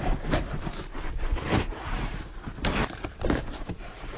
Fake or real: fake